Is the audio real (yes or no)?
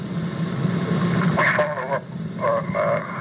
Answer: yes